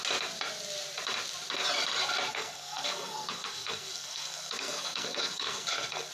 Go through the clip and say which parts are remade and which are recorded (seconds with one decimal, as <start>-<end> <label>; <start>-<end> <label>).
0.0-2.3 recorded; 2.3-6.1 remade